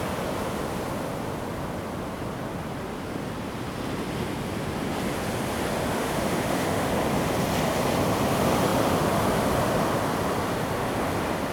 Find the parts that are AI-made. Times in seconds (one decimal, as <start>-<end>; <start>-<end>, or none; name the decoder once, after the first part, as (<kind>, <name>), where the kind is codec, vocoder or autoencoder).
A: 6.0-6.9 (autoencoder, DAC-VAE)